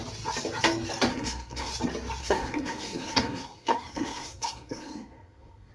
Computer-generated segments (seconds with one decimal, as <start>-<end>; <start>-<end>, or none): 1.1-1.7; 2.2-5.7

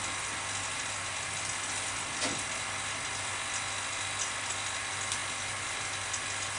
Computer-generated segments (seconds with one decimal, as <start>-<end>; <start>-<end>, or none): none

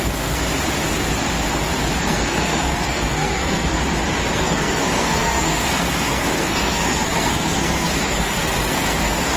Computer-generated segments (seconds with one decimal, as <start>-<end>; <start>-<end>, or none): 0.0-0.4; 2.0-3.8; 4.3-9.4

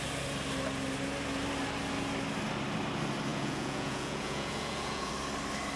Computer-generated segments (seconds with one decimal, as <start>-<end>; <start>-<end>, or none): 3.3-5.1

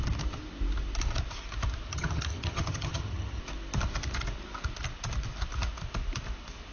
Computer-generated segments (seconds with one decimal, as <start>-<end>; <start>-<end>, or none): 1.9-3.4

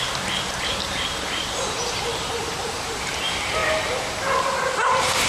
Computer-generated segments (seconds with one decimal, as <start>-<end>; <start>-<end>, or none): 0.0-3.6; 4.4-5.3

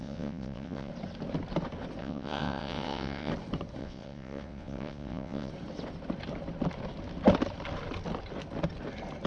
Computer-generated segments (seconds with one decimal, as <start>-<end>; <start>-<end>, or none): 0.0-0.9; 2.0-3.3; 3.8-5.5